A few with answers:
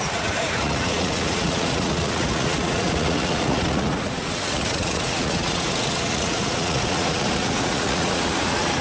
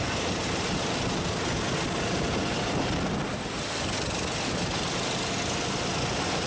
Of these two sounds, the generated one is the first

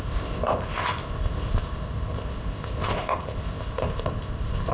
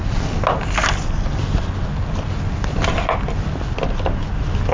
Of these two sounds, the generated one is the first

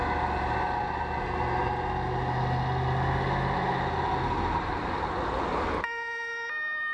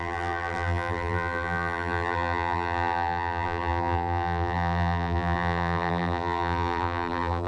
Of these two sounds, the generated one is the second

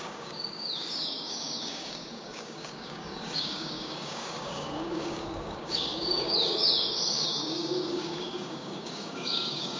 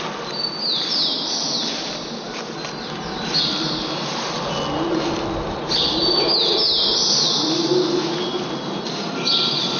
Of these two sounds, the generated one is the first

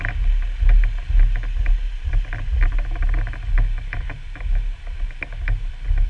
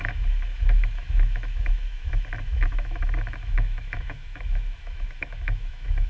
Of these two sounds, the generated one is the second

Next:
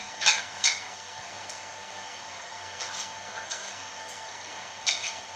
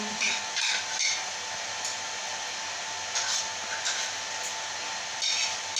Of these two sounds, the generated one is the first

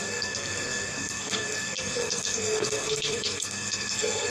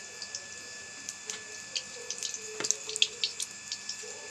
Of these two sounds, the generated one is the first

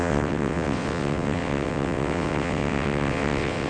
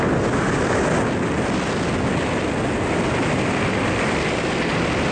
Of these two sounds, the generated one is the first